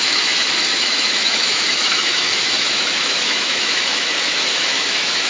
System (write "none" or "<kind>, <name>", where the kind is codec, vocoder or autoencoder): autoencoder, DAC-VAE